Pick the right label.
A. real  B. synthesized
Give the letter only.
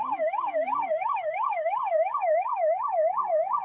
B